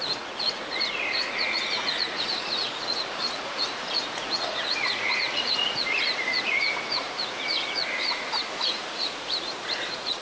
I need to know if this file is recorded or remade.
remade